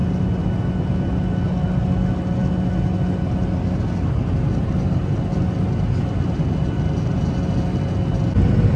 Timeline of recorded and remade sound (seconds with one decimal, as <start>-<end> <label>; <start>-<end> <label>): 0.0-8.8 recorded